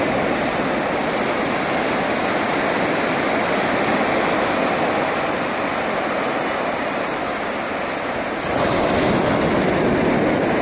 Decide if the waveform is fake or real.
real